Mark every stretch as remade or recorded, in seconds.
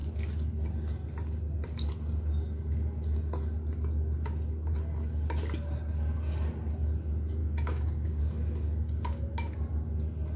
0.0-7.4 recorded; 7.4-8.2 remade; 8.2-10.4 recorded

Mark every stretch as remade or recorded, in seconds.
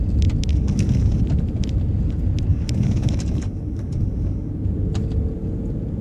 0.0-0.5 recorded; 0.5-1.2 remade; 1.2-2.5 recorded; 2.5-4.5 remade; 4.5-6.0 recorded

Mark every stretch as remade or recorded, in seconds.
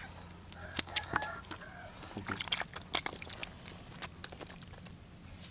0.0-0.6 recorded; 0.6-1.4 remade; 1.4-5.5 recorded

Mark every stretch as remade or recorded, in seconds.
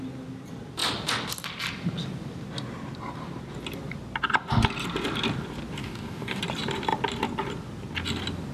0.0-5.8 recorded; 5.8-6.4 remade; 6.4-8.5 recorded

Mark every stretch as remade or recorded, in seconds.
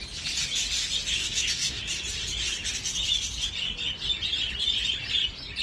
0.0-1.2 recorded; 1.2-1.8 remade; 1.8-5.6 recorded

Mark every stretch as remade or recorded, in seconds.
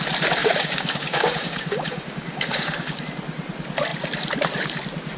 0.0-0.4 recorded; 0.4-3.0 remade; 3.0-5.2 recorded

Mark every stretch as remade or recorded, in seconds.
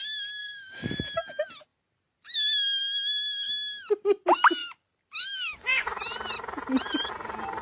0.0-0.4 recorded; 0.4-0.9 remade; 0.9-7.6 recorded